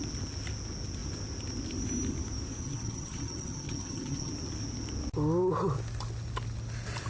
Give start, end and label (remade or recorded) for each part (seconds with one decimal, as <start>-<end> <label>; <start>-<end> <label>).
0.0-2.6 recorded; 2.6-4.3 remade; 4.3-7.1 recorded